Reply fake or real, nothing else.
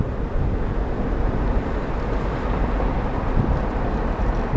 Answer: real